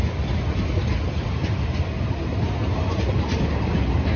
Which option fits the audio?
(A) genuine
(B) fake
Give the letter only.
A